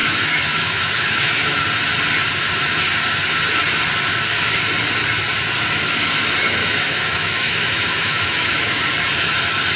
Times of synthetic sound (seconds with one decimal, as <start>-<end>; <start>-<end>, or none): 0.0-1.6; 6.6-8.8